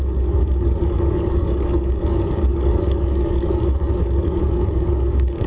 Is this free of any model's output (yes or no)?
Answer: no